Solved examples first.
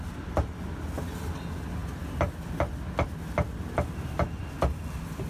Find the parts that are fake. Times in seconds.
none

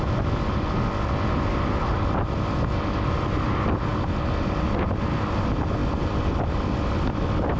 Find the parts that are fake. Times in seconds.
none

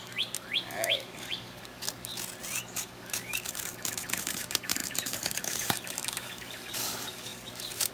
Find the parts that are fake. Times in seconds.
0.0-2.1 (codec, DAC); 2.6-7.9

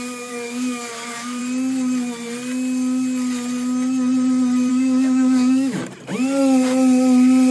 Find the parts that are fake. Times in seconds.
0.0-1.4 (codec, DAC); 4.7-5.8